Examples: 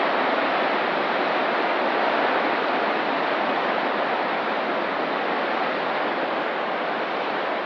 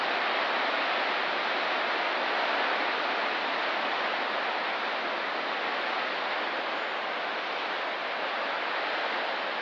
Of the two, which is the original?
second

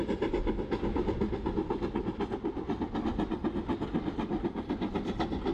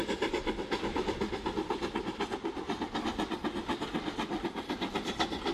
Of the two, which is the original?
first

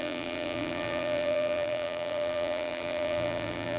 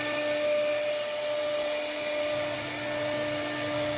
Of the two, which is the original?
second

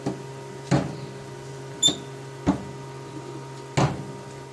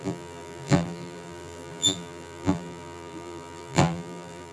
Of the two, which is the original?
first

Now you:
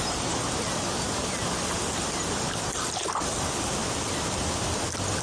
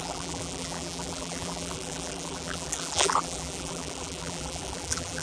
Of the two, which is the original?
first